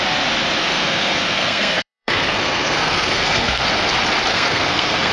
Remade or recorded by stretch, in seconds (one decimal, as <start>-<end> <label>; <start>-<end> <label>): 0.0-0.6 recorded; 0.6-3.7 remade; 3.7-4.3 recorded; 4.3-5.1 remade